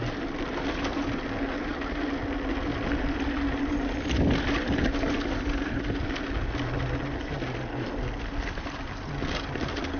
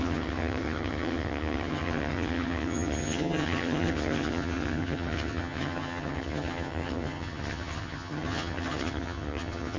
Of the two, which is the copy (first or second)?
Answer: second